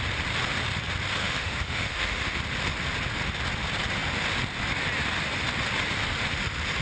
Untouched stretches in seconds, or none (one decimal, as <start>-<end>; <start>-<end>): 0.0-1.2; 2.4-6.8